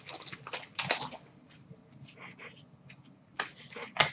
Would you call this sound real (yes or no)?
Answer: yes